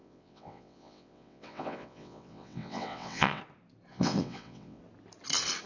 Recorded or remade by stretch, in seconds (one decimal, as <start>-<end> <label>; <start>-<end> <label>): 0.0-3.4 remade; 3.4-3.9 recorded; 3.9-4.8 remade; 4.8-5.7 recorded